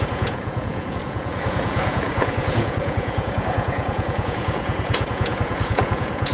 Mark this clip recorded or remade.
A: remade